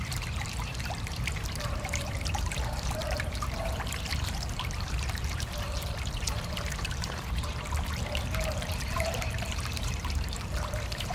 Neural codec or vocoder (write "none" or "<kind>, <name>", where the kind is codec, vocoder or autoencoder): vocoder, BigVGAN v2